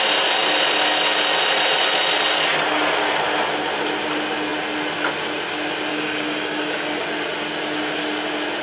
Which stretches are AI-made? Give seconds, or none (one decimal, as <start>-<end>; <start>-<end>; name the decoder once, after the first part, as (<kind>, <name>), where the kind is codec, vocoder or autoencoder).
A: 5.9-7.0 (codec, DAC)